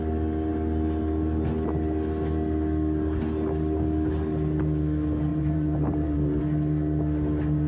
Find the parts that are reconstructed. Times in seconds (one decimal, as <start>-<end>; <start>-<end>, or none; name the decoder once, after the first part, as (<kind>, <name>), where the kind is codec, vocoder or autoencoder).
5.3-6.4 (vocoder, BigVGAN v2)